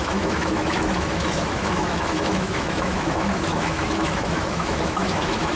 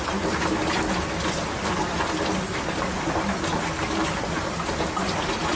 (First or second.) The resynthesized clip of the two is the first